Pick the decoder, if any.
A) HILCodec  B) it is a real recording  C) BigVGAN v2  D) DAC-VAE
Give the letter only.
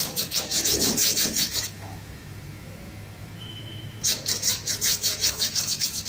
D